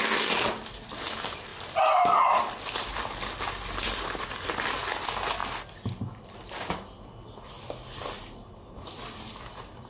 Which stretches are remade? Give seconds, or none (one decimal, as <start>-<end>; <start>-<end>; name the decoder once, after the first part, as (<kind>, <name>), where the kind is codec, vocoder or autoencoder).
none

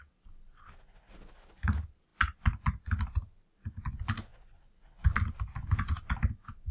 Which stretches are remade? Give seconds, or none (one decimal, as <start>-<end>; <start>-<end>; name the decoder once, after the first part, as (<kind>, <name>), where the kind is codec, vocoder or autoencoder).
none

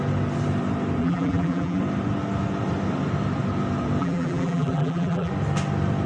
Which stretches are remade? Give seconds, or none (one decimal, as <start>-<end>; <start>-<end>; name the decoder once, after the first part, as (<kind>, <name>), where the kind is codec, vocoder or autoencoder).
1.0-1.8 (vocoder, BigVGAN v2); 4.0-5.3

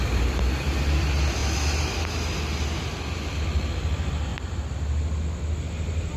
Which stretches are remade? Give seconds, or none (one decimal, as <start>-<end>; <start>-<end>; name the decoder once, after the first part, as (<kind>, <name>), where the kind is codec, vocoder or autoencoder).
0.0-1.4 (vocoder, BigVGAN v2); 3.8-4.3; 5.6-6.2

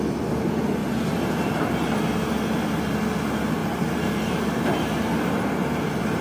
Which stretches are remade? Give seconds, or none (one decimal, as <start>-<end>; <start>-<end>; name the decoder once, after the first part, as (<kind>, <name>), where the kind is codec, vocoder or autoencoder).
3.6-4.9 (vocoder, BigVGAN v2)

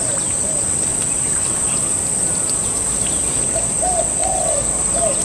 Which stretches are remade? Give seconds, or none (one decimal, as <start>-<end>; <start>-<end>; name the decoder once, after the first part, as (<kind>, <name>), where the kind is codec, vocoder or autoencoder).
0.9-3.4 (vocoder, BigVGAN v2); 4.2-5.2

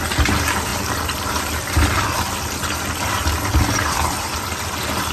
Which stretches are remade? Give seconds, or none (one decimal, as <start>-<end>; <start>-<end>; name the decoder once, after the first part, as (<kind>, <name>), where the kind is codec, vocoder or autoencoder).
none

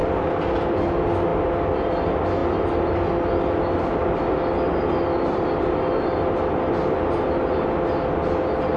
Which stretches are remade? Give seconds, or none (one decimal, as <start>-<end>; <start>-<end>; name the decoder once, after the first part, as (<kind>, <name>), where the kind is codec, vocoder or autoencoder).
none